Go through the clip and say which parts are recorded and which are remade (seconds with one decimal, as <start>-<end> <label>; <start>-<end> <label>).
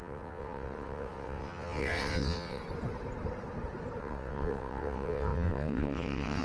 0.0-2.6 remade; 2.6-4.0 recorded; 4.0-6.4 remade